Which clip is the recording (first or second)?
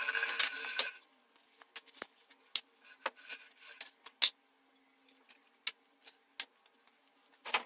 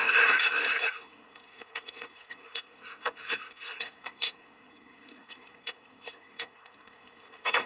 first